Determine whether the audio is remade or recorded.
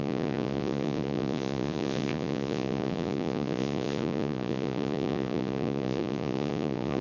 remade